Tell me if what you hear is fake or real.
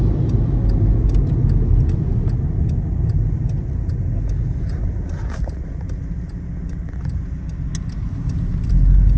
real